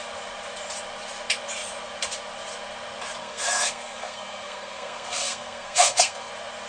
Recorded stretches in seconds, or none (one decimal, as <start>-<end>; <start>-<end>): 0.0-3.2; 6.3-6.7